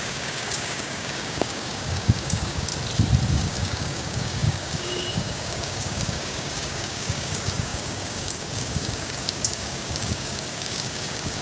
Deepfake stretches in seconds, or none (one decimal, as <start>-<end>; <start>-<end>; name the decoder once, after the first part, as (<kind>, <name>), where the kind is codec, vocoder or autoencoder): 0.0-2.7 (codec, DAC); 3.3-11.4